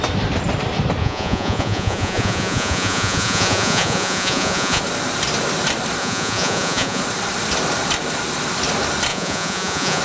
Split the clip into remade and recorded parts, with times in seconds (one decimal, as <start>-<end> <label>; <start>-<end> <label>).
0.0-1.0 recorded; 1.0-4.8 remade; 4.8-6.0 recorded; 6.0-7.0 remade; 7.0-9.1 recorded; 9.1-10.0 remade